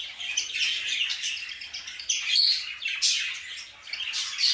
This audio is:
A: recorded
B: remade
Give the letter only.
A